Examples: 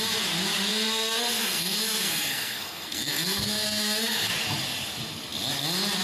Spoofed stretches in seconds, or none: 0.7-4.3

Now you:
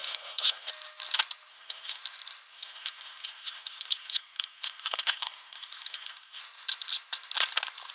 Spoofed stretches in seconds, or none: 0.0-0.7; 1.5-2.0; 2.5-6.4

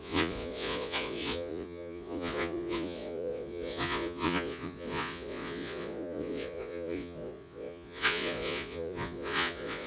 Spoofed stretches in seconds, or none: 0.0-9.9

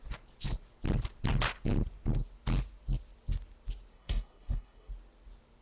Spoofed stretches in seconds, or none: 3.9-4.9

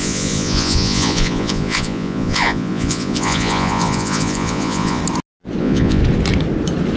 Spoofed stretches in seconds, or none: 0.0-5.0; 5.6-6.0

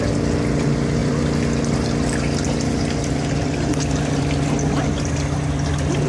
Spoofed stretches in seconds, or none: none